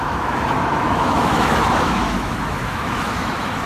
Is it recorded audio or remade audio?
remade